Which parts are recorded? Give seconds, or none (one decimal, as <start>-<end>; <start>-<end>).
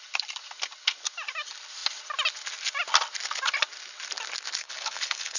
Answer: 0.0-4.6